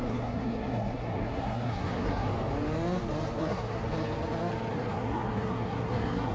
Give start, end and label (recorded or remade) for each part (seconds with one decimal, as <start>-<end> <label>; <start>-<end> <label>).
0.0-2.3 remade; 2.3-3.4 recorded; 3.4-3.8 remade; 3.8-4.7 recorded; 4.7-6.3 remade